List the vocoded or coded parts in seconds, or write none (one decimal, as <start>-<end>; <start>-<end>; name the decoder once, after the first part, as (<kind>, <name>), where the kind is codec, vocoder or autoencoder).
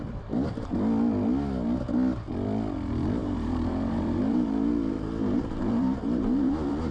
3.2-6.9 (vocoder, BigVGAN v2)